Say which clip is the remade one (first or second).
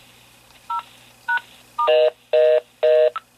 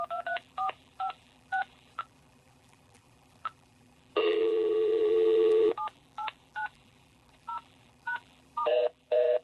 second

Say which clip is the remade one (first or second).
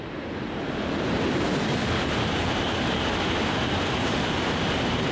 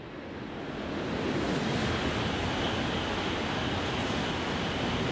first